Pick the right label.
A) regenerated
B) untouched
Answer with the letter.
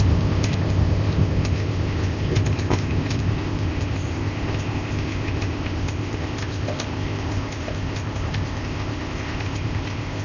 A